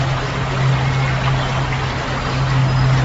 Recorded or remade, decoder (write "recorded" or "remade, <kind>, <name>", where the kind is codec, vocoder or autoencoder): recorded